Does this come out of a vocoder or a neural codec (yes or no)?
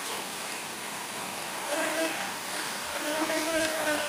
yes